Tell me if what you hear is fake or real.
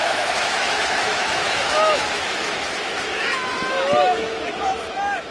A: fake